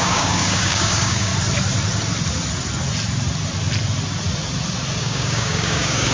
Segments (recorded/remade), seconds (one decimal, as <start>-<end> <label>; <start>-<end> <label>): 0.0-1.3 remade; 1.3-5.0 recorded; 5.0-6.1 remade